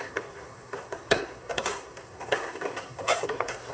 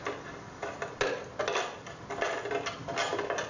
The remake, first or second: first